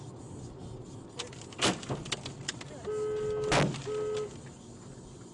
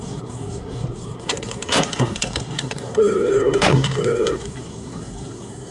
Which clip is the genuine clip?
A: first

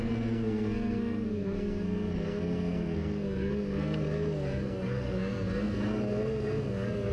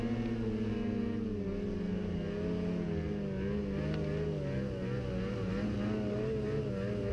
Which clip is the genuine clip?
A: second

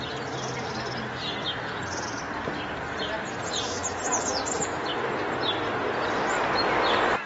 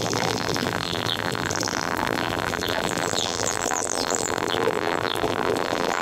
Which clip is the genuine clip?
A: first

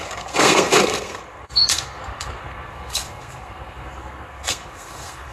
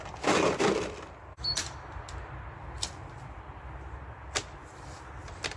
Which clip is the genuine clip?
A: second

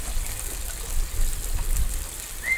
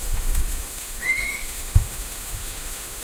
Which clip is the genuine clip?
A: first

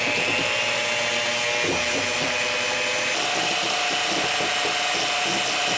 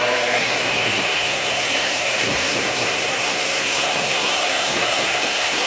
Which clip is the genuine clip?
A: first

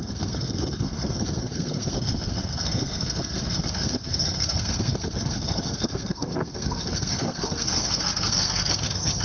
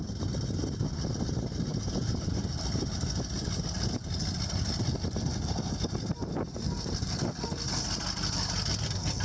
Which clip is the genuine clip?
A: second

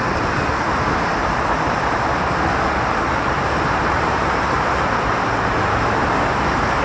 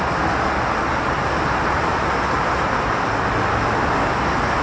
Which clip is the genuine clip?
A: second